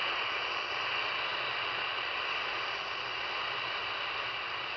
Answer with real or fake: real